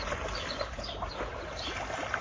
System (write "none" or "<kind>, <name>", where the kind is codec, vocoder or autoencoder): none